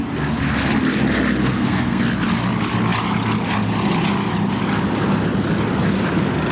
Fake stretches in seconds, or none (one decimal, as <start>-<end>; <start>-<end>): 1.4-2.0